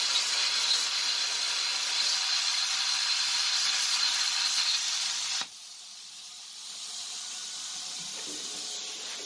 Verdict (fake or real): fake